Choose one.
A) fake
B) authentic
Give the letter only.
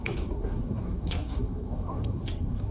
A